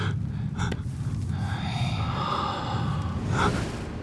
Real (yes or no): yes